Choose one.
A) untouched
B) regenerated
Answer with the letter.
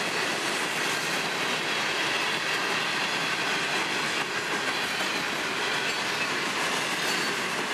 A